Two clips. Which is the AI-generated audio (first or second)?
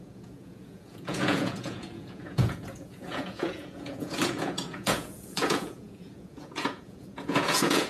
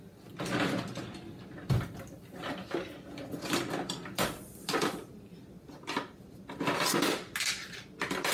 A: first